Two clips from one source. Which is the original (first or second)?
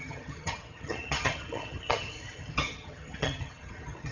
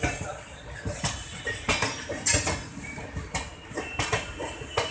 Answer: second